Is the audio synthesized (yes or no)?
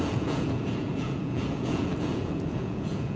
yes